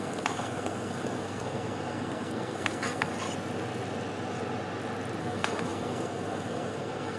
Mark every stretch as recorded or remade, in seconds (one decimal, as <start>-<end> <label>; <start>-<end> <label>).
0.0-3.1 remade; 3.1-5.2 recorded; 5.2-7.2 remade